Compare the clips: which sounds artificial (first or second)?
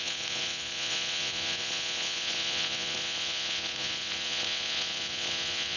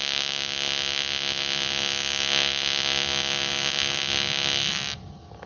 first